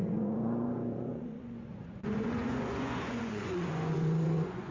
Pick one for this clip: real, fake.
fake